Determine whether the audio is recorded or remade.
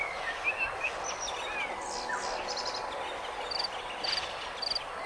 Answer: recorded